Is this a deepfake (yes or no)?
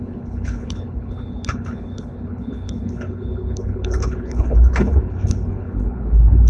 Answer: yes